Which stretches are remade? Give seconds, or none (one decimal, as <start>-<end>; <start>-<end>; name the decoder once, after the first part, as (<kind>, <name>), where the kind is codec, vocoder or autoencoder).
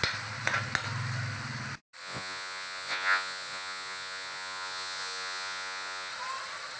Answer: 2.0-6.1 (vocoder, Vocos)